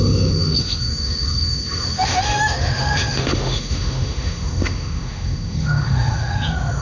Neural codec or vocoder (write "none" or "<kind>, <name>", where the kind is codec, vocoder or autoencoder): autoencoder, DAC-VAE